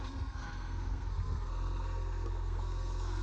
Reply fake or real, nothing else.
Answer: fake